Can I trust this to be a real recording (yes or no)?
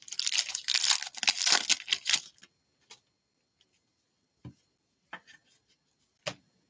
yes